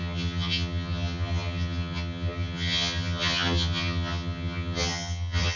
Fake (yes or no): yes